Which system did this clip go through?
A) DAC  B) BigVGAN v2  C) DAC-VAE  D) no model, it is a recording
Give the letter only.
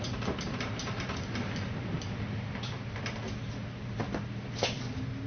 D